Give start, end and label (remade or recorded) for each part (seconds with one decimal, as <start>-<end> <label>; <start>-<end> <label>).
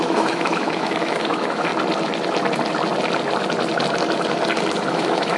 0.0-1.7 remade; 1.7-4.9 recorded; 4.9-5.4 remade